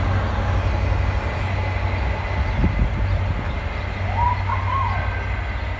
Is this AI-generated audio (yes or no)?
no